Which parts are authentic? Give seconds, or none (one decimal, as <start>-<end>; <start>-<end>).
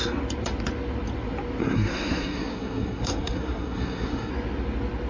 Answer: 0.0-1.6; 4.3-5.1